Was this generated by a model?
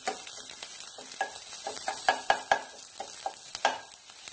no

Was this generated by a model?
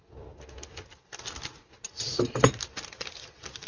no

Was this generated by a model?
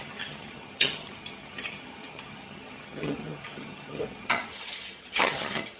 yes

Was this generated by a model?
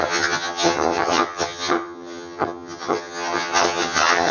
yes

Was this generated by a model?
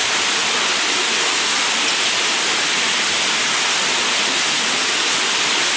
no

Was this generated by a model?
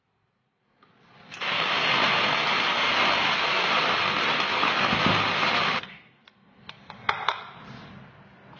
no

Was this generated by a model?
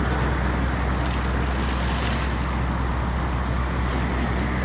no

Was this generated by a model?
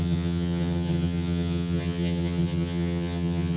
yes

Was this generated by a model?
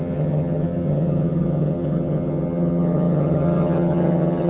yes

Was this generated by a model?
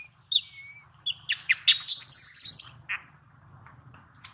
no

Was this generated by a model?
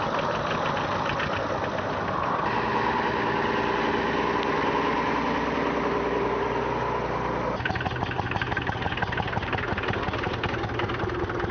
no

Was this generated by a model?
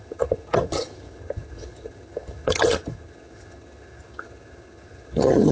yes